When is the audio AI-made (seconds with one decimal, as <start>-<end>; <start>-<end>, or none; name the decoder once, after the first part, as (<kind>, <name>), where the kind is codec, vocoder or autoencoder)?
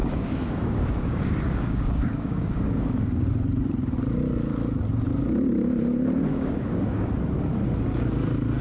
0.0-3.3 (codec, DAC); 6.3-7.1